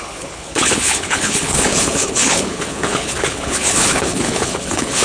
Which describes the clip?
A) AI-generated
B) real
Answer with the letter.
A